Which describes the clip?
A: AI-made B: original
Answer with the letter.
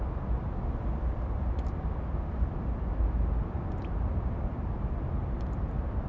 B